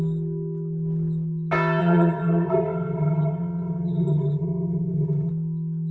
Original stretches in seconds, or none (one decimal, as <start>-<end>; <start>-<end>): 0.0-1.8; 5.3-5.9